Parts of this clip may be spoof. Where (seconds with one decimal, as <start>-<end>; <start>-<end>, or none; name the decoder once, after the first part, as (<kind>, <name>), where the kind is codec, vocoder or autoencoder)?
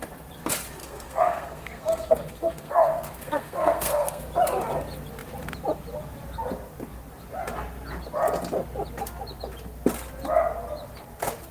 0.8-4.2 (codec, SNAC)